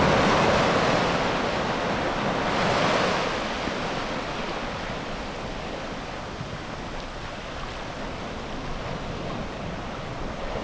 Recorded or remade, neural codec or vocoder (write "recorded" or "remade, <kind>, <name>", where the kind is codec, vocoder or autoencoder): recorded